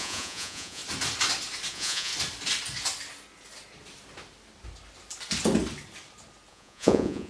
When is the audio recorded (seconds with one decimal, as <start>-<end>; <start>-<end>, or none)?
0.8-1.7; 2.1-6.5